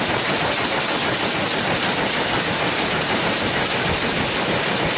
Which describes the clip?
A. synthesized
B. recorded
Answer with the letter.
B